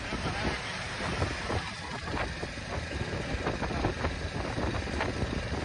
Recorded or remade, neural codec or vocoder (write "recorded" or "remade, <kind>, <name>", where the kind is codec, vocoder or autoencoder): recorded